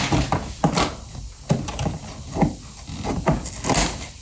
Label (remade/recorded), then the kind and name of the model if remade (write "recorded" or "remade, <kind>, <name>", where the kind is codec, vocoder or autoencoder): recorded